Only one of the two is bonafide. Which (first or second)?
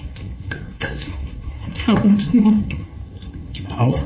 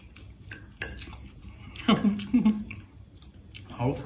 second